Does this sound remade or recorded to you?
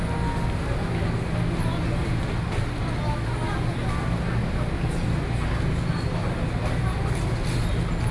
recorded